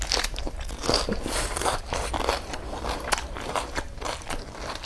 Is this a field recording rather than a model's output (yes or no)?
no